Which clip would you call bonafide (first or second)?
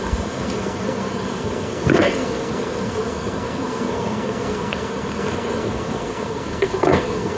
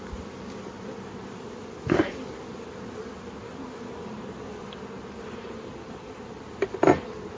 second